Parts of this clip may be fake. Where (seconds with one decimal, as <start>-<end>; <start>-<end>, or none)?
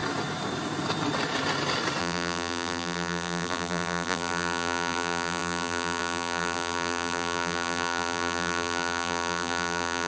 2.0-10.1